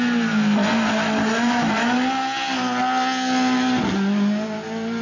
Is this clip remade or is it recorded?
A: recorded